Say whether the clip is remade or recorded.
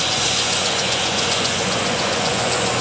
remade